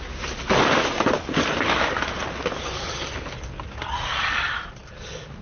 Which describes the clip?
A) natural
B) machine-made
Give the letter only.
A